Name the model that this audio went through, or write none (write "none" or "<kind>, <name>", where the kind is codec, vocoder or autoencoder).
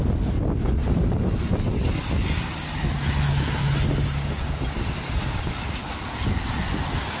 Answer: none